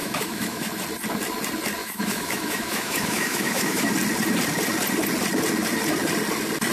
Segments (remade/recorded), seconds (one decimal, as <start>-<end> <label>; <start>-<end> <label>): 0.0-0.7 remade; 0.7-1.8 recorded; 1.8-3.9 remade; 3.9-6.7 recorded